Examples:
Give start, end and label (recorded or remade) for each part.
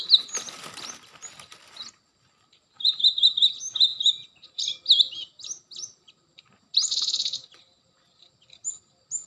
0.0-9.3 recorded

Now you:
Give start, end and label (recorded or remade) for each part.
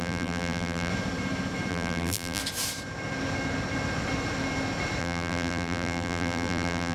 0.0-0.9 remade; 0.9-1.7 recorded; 1.7-2.4 remade; 2.4-5.0 recorded; 5.0-6.9 remade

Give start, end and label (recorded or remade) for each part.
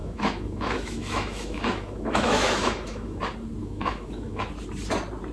0.0-3.2 remade; 3.2-3.6 recorded; 3.6-4.4 remade; 4.4-5.3 recorded